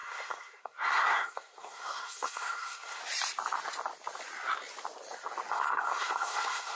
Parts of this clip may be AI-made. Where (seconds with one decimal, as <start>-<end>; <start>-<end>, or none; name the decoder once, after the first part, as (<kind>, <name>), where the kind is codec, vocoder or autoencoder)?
0.0-3.0 (codec, SNAC); 5.5-6.8